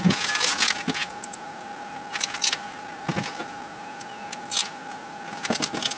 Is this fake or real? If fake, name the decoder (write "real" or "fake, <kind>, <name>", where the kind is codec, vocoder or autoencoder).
real